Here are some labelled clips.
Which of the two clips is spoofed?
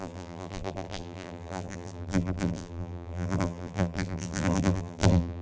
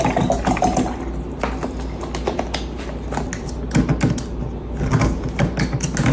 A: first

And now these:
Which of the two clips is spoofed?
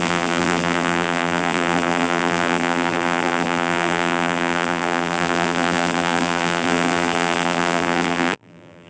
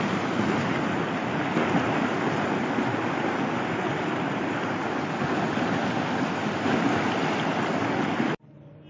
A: first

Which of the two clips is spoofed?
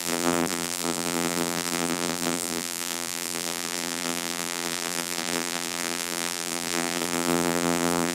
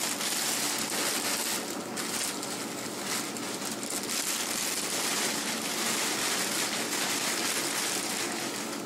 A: first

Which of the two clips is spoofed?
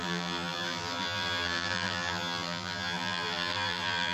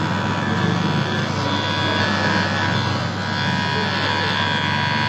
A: first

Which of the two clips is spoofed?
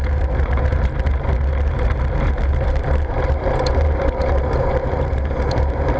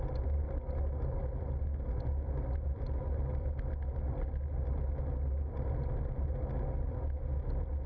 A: first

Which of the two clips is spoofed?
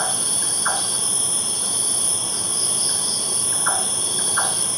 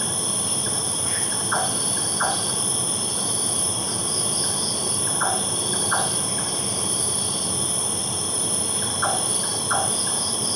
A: second